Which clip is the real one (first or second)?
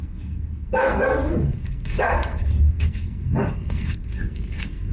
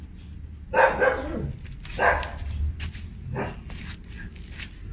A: second